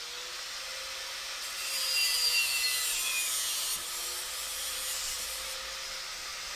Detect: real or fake real